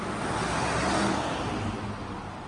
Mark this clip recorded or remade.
recorded